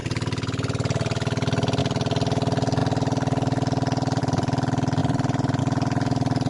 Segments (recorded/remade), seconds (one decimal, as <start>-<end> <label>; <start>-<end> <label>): 0.0-6.5 recorded